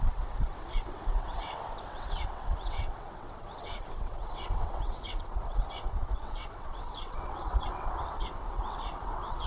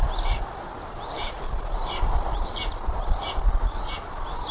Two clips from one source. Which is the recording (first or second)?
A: second